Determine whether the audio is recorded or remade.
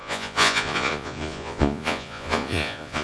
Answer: remade